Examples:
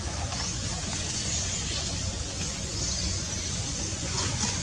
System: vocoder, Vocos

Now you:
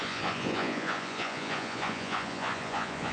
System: vocoder, Vocos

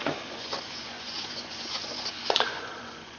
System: vocoder, Vocos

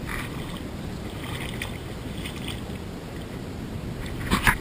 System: none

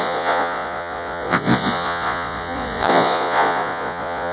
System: vocoder, Vocos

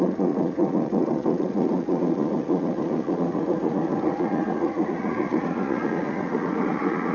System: vocoder, Vocos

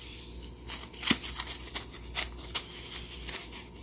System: none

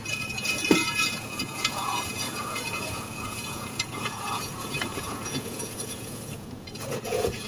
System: vocoder, Vocos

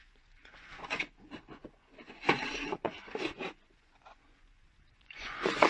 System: vocoder, Vocos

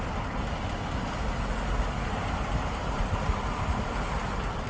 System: none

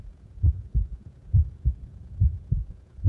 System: vocoder, Vocos